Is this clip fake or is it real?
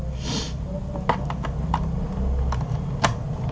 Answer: real